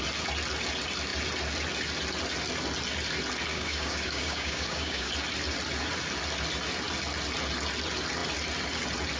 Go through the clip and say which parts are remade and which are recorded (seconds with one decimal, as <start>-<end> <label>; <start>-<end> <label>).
0.0-3.5 recorded; 3.5-5.1 remade; 5.1-9.2 recorded